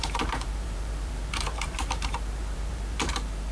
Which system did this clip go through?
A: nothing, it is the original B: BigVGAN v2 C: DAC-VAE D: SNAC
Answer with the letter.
B